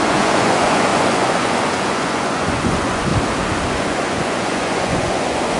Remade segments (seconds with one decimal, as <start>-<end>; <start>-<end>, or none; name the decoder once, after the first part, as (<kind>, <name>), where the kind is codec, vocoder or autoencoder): 0.0-3.1 (vocoder, Vocos); 3.7-5.6